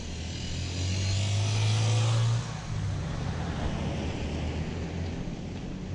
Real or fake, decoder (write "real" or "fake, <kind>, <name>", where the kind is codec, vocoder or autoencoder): real